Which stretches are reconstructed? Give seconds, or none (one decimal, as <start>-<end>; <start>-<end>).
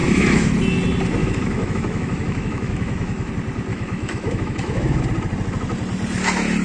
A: 0.0-0.5; 1.2-3.3; 3.7-5.0